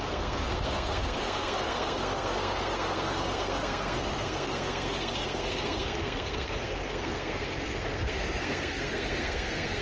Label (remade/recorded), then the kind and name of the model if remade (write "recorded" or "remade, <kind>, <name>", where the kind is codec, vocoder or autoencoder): remade, codec, SNAC